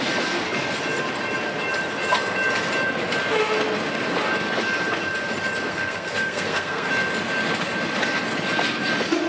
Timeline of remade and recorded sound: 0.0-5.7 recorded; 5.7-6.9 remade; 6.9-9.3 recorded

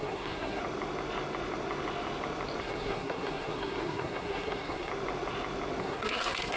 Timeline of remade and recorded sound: 0.0-0.6 remade; 0.6-2.6 recorded; 2.6-4.9 remade; 4.9-5.8 recorded; 5.8-6.6 remade

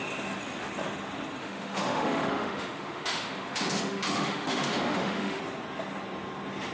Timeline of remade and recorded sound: 0.0-1.4 recorded; 1.4-5.4 remade; 5.4-6.7 recorded

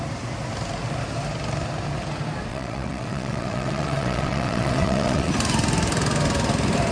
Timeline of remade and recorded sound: 0.0-2.5 recorded; 2.5-5.3 remade; 5.3-6.9 recorded

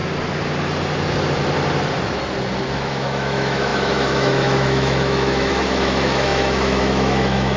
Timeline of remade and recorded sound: 0.0-2.7 recorded; 2.7-7.6 remade